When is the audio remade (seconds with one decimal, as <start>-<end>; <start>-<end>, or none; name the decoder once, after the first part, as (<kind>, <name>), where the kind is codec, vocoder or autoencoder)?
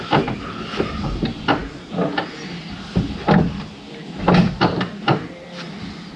1.6-5.2 (vocoder, BigVGAN v2)